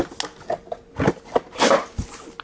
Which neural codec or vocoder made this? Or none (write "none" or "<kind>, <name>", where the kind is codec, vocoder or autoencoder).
none